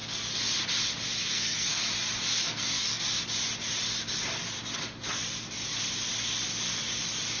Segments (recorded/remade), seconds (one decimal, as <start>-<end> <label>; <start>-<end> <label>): 0.0-1.2 recorded; 1.2-1.8 remade; 1.8-2.4 recorded; 2.4-3.0 remade; 3.0-7.4 recorded

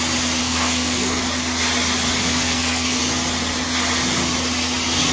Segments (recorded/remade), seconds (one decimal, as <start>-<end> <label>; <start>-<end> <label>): 0.0-0.4 recorded; 0.4-1.2 remade; 1.2-2.2 recorded; 2.2-3.0 remade; 3.0-5.1 recorded

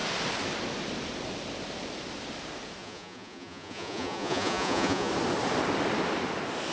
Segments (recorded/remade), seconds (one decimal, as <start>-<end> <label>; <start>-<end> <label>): 0.0-2.8 recorded; 2.8-5.1 remade; 5.1-6.7 recorded

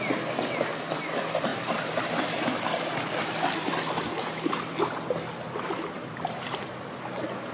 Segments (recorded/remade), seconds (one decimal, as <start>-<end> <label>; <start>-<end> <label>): 0.0-7.5 recorded

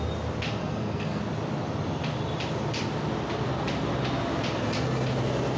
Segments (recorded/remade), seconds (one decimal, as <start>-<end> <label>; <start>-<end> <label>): 0.0-0.6 recorded; 0.6-1.2 remade; 1.2-5.6 recorded